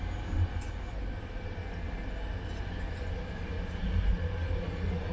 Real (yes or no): yes